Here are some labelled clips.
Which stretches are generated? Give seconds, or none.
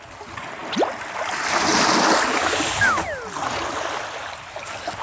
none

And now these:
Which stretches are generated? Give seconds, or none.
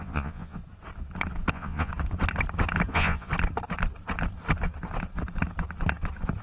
0.0-0.6 (vocoder, Vocos); 1.5-1.9; 2.9-3.3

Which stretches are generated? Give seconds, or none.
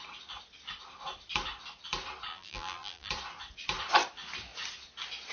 2.3-3.1 (vocoder, BigVGAN v2)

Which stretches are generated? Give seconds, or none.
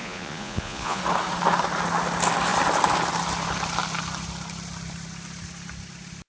0.0-1.0 (vocoder, Vocos)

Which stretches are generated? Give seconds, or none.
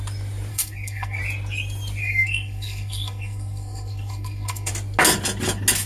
0.5-1.2 (codec, SNAC); 2.0-4.7